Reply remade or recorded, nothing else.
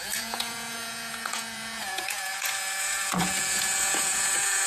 remade